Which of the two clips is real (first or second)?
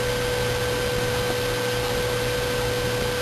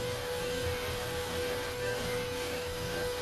first